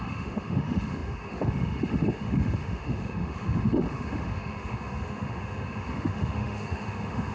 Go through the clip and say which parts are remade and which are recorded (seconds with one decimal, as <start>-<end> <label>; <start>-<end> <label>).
0.0-7.3 remade